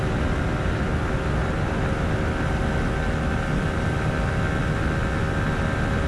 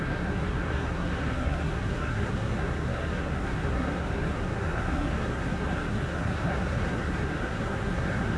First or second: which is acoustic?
first